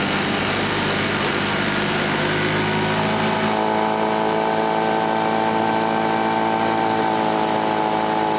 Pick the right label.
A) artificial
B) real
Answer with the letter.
B